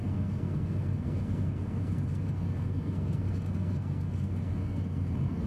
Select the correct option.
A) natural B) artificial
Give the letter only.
B